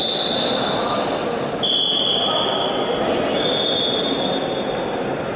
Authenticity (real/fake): real